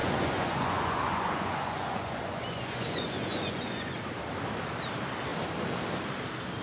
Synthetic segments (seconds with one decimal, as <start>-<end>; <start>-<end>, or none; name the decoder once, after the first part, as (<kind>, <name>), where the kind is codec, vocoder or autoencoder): 0.0-4.0 (vocoder, Vocos)